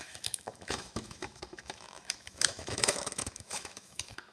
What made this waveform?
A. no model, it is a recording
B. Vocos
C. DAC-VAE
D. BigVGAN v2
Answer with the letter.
C